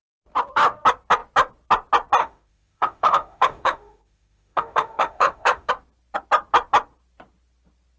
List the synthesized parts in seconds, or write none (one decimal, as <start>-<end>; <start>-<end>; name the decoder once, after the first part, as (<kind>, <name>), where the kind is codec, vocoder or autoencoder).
2.2-5.7 (autoencoder, DAC-VAE)